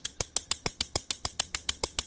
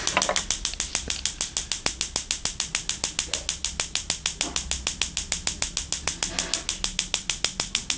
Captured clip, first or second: second